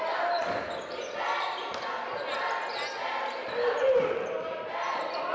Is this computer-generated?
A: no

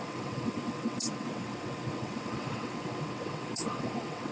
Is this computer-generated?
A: yes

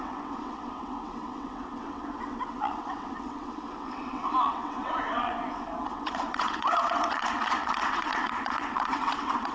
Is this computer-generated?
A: yes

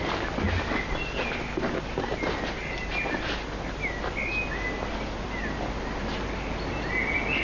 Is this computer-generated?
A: no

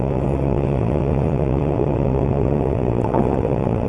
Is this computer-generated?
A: yes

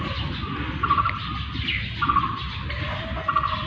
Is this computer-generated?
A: no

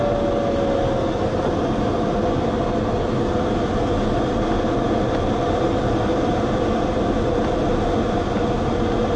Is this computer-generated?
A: no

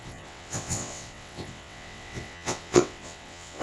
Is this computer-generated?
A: yes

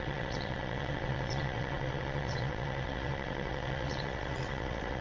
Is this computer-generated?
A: yes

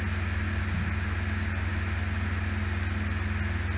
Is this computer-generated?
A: no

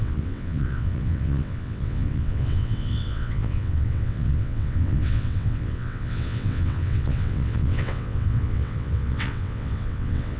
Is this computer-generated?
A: yes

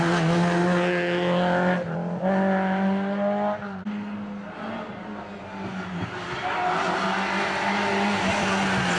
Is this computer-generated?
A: no